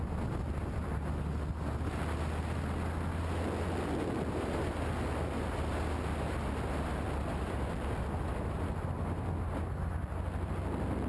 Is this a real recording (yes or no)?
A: yes